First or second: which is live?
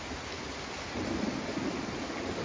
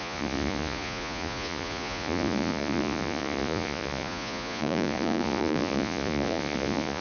first